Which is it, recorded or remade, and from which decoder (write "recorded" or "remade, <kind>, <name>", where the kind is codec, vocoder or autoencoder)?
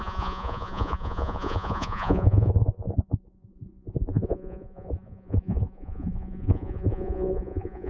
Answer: remade, vocoder, Vocos